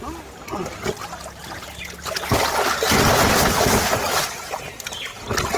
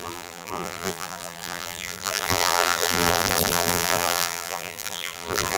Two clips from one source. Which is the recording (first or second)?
first